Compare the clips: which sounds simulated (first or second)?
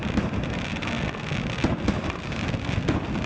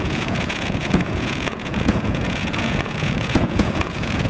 second